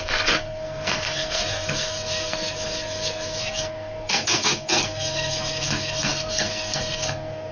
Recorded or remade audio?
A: remade